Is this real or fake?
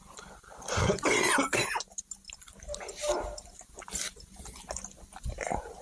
real